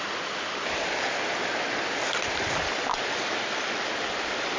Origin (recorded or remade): recorded